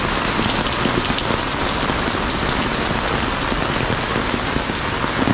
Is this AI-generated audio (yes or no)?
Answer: no